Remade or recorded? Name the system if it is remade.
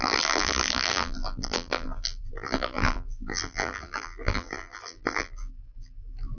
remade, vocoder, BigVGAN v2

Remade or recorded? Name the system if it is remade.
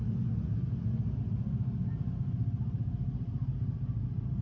recorded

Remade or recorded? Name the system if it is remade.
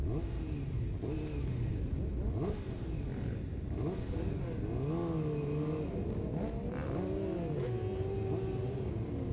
recorded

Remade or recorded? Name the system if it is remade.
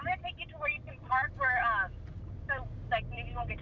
recorded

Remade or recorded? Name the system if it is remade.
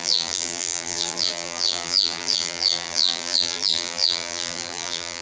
remade, vocoder, BigVGAN v2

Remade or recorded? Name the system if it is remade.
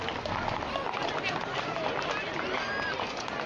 recorded